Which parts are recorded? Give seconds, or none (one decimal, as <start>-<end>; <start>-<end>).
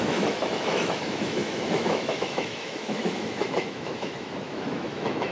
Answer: none